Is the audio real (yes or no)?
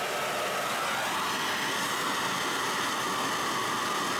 yes